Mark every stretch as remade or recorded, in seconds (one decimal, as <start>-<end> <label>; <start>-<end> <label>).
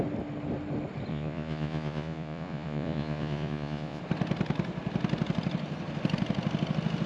0.0-1.1 recorded; 1.1-4.0 remade; 4.0-7.1 recorded